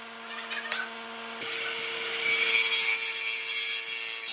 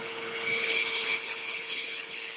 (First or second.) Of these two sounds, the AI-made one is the second